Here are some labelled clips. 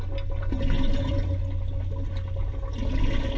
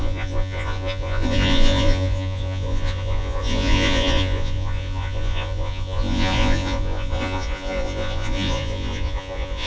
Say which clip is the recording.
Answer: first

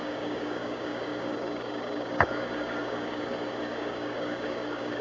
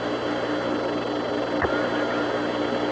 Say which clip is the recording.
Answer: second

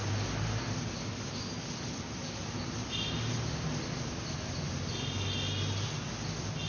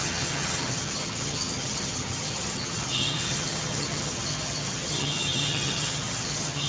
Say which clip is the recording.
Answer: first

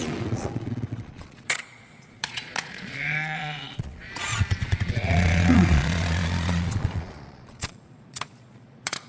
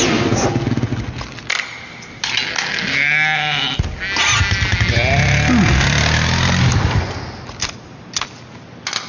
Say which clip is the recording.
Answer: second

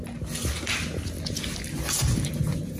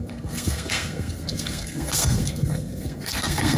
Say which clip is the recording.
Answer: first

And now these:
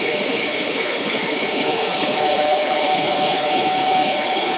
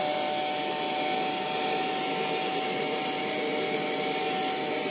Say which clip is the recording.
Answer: second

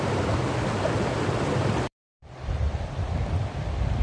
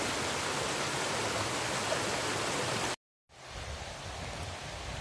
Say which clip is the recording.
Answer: second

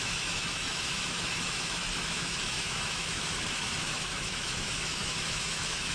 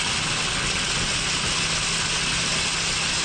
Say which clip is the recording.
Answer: second